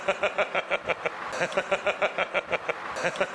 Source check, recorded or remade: recorded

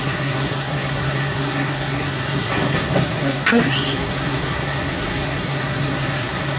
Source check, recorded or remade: remade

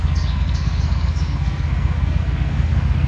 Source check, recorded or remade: remade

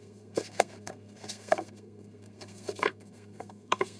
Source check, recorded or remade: remade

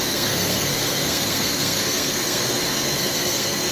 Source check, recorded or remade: remade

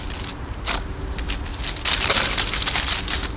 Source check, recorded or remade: recorded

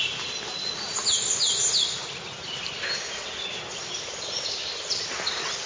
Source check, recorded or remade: recorded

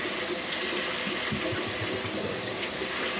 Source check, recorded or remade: recorded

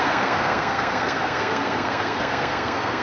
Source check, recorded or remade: remade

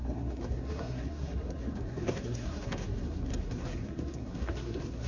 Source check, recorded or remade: remade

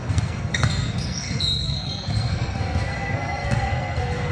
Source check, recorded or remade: remade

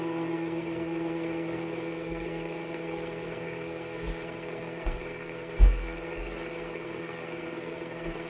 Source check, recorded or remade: remade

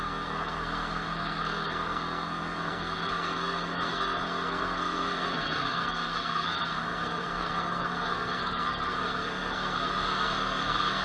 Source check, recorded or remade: remade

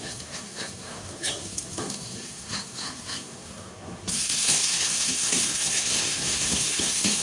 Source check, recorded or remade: remade